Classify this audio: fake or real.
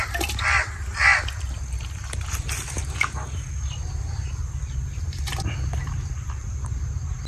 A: real